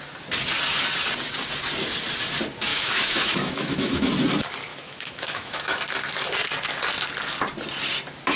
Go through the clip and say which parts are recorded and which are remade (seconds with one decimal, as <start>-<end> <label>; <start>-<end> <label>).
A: 0.0-2.7 recorded; 2.7-4.1 remade; 4.1-4.7 recorded; 4.7-5.8 remade; 5.8-8.4 recorded